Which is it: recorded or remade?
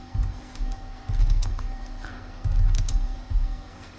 remade